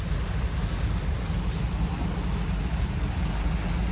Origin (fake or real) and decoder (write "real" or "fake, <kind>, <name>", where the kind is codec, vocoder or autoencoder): real